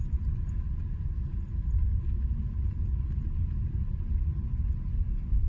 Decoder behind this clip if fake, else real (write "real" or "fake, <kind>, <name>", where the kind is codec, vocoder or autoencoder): real